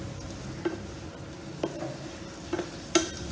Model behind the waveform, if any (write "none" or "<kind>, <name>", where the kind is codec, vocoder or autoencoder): none